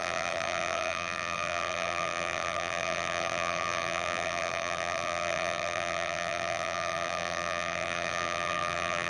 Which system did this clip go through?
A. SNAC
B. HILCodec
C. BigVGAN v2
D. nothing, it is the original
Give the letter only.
C